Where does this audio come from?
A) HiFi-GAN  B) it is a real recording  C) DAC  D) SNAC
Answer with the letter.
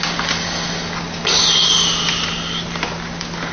B